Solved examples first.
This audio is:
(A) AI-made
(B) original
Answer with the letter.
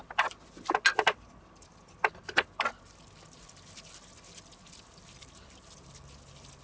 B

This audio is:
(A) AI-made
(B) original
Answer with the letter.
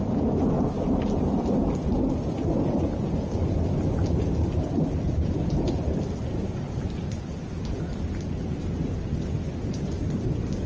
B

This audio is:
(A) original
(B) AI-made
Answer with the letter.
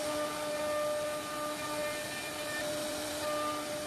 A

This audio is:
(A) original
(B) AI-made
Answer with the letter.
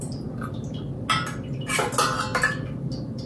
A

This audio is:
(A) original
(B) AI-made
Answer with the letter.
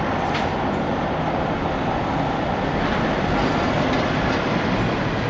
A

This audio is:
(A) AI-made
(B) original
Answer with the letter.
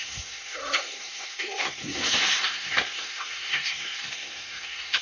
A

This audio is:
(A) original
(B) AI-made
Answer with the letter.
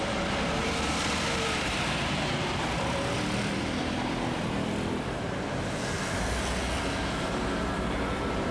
B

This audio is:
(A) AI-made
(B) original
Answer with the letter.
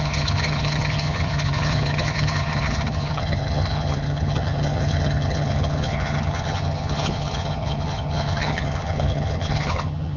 A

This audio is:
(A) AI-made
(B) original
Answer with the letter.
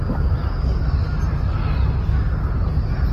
B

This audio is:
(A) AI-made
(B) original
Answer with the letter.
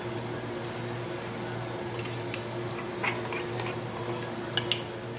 B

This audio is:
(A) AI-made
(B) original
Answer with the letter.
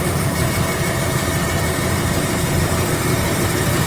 A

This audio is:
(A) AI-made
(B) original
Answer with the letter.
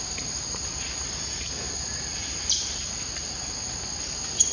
B